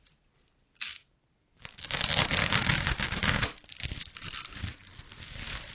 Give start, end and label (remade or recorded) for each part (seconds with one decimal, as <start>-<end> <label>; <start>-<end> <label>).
0.0-2.4 recorded; 2.4-3.4 remade; 3.4-5.7 recorded